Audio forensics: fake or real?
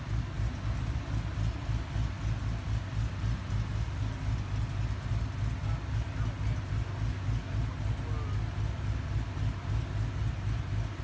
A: real